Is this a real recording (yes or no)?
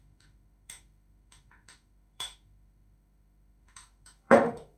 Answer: no